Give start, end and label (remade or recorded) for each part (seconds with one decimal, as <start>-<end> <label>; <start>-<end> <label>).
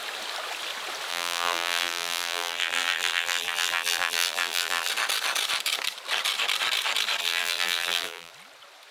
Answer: 0.0-1.1 recorded; 1.1-4.9 remade; 4.9-7.2 recorded; 7.2-8.3 remade; 8.3-8.9 recorded